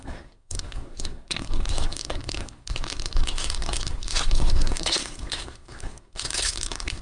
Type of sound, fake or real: fake